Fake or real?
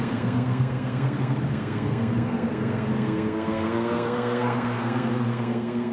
fake